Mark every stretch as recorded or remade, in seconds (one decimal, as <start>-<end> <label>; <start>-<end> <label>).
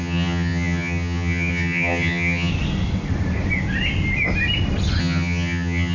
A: 0.0-2.5 remade; 2.5-5.0 recorded; 5.0-5.9 remade